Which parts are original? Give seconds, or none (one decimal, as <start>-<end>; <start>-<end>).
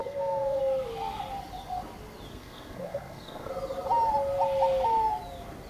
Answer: 0.6-2.3; 3.5-5.7